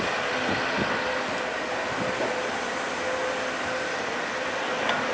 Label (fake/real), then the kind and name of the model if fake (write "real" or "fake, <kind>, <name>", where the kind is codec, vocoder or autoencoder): real